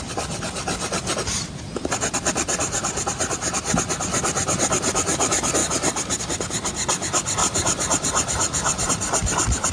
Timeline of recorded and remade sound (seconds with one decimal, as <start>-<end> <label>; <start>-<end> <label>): 0.0-5.6 recorded; 5.6-6.2 remade; 6.2-7.4 recorded; 7.4-8.9 remade; 8.9-9.7 recorded